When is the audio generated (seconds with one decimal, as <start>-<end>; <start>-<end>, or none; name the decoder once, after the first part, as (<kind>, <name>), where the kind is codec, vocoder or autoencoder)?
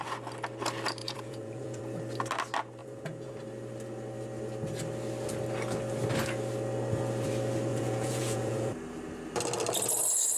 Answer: 1.0-1.8 (vocoder, Vocos); 2.8-3.3; 7.7-8.7